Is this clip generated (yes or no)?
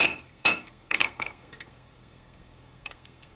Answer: yes